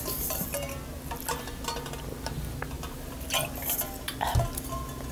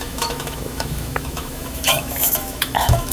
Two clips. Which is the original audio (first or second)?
first